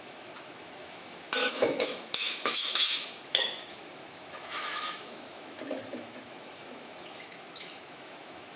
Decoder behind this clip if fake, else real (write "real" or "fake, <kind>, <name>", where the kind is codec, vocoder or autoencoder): fake, autoencoder, DAC-VAE